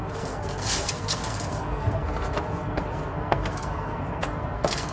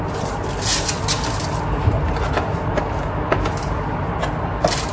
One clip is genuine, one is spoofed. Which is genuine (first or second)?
second